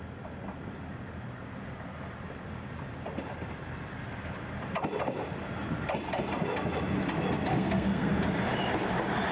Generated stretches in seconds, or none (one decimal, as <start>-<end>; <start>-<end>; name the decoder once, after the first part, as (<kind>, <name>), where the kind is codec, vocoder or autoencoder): 7.5-8.1 (codec, SNAC)